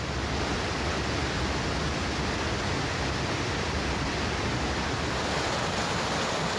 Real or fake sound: real